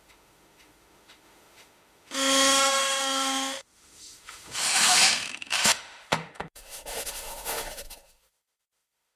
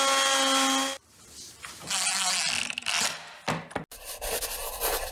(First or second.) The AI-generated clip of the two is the first